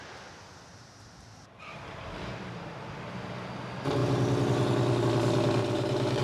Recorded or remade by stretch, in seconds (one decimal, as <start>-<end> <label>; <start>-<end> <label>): 0.0-0.7 recorded; 0.7-2.4 remade; 2.4-5.6 recorded; 5.6-6.2 remade